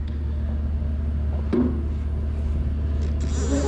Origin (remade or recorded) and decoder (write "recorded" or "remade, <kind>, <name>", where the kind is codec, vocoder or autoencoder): recorded